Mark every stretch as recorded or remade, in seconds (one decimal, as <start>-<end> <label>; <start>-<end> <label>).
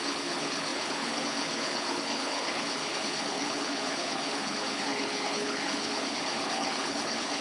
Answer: 0.0-7.4 remade